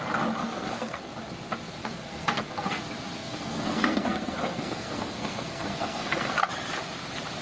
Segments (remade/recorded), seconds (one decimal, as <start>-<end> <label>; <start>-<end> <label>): 0.0-0.4 recorded; 0.4-1.1 remade; 1.1-1.8 recorded; 1.8-2.8 remade; 2.8-3.2 recorded; 3.2-6.5 remade; 6.5-7.4 recorded